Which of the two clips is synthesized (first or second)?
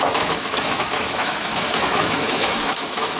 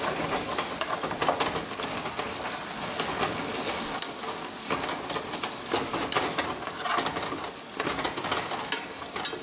first